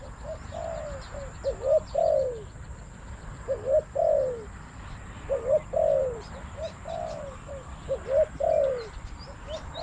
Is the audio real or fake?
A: real